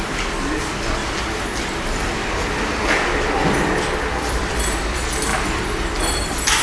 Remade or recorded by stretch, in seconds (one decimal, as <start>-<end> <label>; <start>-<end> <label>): 0.0-6.6 recorded